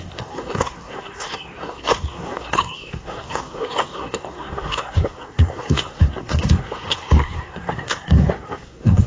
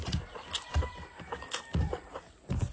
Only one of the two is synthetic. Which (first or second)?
first